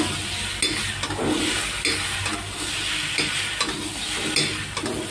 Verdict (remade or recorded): recorded